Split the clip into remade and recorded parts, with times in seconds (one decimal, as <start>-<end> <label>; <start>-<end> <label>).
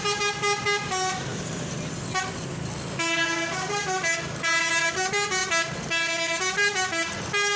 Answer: 0.0-7.6 recorded